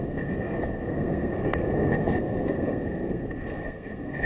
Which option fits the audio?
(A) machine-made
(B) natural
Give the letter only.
A